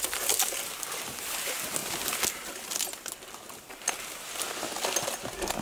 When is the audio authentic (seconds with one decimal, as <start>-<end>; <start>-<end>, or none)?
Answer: 0.0-5.6